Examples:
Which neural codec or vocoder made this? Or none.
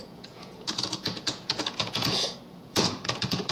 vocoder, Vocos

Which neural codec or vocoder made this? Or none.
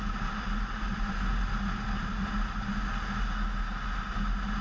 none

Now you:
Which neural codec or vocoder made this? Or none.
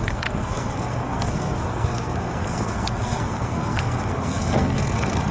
codec, SNAC